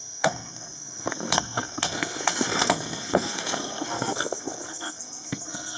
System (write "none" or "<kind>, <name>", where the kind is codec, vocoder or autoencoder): codec, SNAC